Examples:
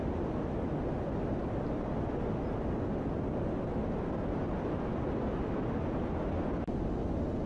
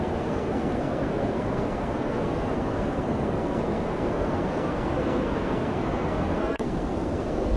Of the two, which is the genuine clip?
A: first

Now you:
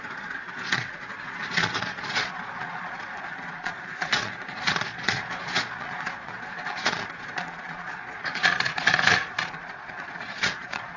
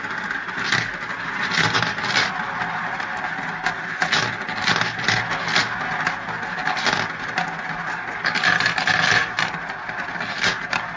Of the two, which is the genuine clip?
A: second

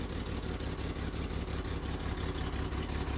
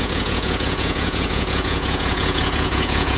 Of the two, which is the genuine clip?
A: first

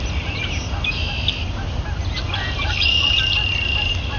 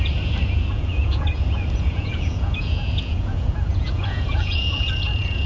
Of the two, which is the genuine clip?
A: first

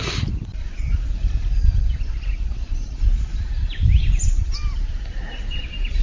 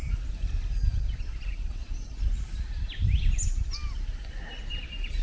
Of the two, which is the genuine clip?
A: second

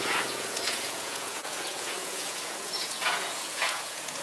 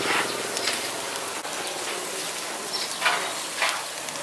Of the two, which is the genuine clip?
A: second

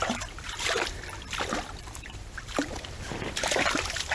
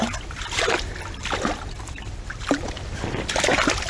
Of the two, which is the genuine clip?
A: second